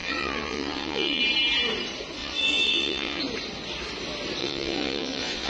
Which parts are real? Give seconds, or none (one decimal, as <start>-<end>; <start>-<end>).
1.2-2.2; 3.2-4.4